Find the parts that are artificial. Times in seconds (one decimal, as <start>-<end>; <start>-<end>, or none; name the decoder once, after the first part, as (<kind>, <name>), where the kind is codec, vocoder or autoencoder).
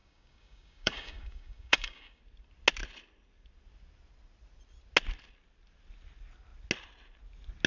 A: 0.0-2.2 (codec, DAC)